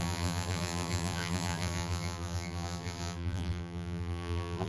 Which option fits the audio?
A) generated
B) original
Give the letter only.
A